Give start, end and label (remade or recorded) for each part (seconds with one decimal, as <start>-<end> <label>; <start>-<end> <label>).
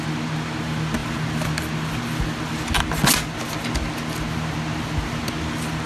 0.0-5.9 recorded